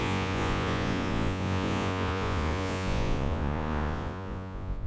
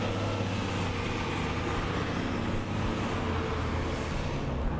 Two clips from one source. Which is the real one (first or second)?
second